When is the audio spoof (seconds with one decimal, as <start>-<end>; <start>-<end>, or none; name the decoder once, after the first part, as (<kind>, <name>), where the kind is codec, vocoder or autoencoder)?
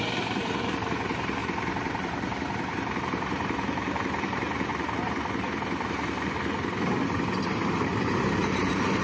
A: 0.0-1.4 (vocoder, BigVGAN v2); 3.0-4.7; 7.5-7.9; 8.5-9.0